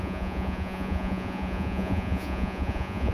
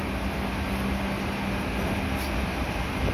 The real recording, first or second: second